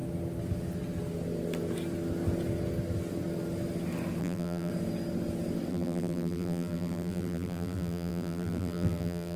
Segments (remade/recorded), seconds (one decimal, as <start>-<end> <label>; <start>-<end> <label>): 0.0-4.2 recorded; 4.2-4.7 remade; 4.7-5.7 recorded; 5.7-9.4 remade